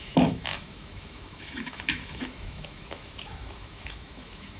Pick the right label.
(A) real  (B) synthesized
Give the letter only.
B